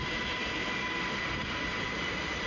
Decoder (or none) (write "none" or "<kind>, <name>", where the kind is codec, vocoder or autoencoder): none